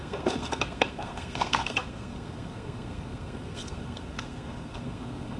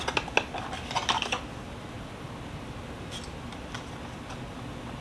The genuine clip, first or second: second